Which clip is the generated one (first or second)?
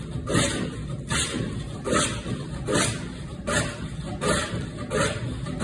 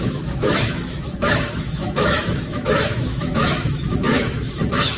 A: second